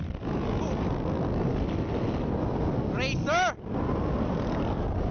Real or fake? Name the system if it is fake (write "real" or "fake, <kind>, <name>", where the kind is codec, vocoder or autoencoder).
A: real